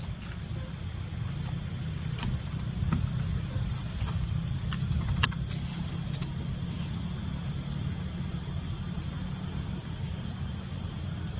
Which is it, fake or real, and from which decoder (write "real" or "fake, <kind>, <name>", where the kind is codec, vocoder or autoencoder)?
real